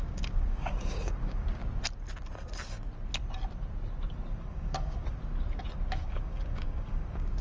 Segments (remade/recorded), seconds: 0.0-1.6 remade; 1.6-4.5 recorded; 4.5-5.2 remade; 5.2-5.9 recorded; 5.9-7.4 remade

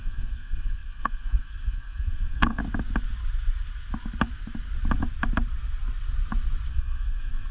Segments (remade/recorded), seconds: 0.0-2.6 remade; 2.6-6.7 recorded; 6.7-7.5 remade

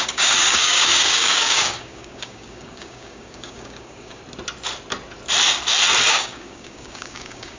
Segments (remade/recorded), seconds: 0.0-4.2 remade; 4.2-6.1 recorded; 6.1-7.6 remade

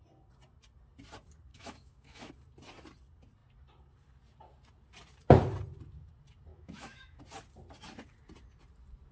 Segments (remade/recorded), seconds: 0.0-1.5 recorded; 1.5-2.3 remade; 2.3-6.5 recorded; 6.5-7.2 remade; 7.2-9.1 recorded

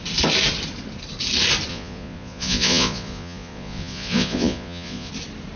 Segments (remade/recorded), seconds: 0.0-1.7 recorded; 1.7-5.1 remade; 5.1-5.6 recorded

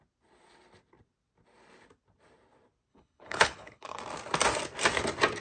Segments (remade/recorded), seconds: 0.0-2.9 recorded; 2.9-4.0 remade; 4.0-5.4 recorded